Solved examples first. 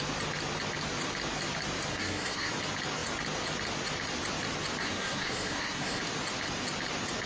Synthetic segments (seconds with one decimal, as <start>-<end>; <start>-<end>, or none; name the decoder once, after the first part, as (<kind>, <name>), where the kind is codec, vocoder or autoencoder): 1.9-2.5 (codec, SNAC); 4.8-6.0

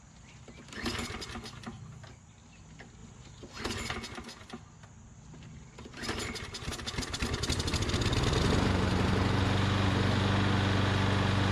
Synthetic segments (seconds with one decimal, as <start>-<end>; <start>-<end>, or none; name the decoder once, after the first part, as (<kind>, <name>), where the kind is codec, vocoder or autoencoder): none

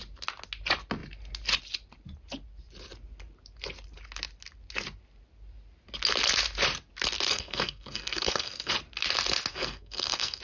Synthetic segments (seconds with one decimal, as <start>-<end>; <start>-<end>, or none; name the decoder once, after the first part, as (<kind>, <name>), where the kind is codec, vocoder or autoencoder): 7.3-8.7 (codec, SNAC); 9.5-10.4

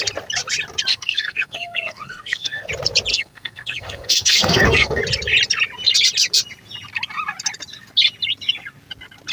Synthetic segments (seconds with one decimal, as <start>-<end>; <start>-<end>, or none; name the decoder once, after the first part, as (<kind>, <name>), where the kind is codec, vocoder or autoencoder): 0.9-2.7 (codec, SNAC); 3.1-5.0

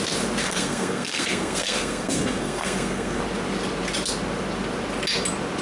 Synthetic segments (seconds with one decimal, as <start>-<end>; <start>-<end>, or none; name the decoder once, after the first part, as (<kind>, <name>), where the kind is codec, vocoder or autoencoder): 0.4-3.2 (codec, SNAC)

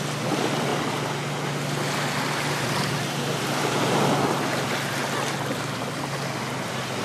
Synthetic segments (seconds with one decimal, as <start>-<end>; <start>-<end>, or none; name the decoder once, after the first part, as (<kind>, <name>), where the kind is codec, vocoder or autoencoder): none

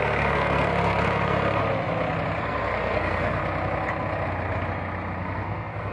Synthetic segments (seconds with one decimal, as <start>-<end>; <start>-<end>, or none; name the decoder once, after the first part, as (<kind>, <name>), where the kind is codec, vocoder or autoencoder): 0.0-1.6 (codec, SNAC); 2.4-3.4; 5.2-5.9

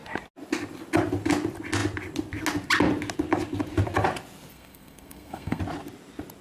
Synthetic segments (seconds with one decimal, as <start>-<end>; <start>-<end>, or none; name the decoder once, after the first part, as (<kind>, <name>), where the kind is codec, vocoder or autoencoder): 4.5-5.6 (codec, SNAC)